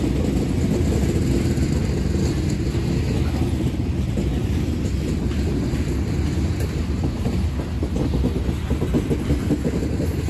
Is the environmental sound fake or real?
real